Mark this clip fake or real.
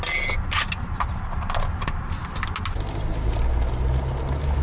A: real